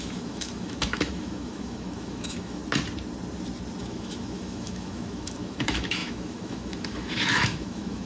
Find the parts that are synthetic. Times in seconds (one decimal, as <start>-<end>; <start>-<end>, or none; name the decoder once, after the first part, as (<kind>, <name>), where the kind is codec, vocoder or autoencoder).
0.0-2.6 (autoencoder, DAC-VAE); 3.8-8.1